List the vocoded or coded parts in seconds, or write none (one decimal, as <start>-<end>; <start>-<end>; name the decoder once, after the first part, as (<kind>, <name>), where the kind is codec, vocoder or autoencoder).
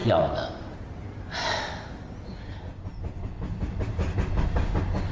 0.0-1.5 (vocoder, BigVGAN v2)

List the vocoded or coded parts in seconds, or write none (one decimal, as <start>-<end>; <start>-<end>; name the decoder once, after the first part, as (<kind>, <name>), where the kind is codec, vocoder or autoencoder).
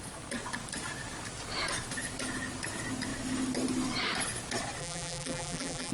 4.8-5.9 (vocoder, BigVGAN v2)